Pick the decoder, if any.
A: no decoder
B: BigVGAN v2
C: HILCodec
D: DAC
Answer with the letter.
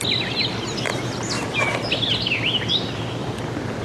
A